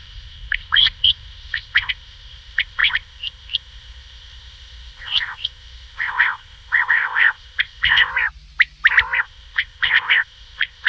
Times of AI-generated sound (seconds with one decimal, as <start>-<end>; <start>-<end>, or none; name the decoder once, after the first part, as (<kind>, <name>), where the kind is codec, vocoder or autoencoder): 0.0-8.1 (codec, ZipCodec); 9.2-10.9